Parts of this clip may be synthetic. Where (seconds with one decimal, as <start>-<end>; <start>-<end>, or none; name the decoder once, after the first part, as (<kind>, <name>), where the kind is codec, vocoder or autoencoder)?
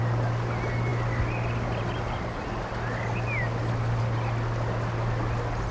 none